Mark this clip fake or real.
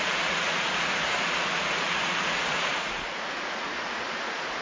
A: fake